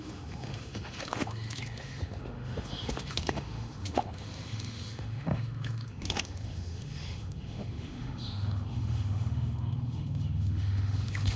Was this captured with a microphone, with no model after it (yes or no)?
no